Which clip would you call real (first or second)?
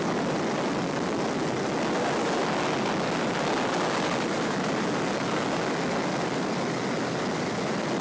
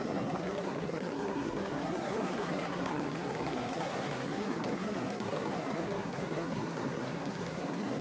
first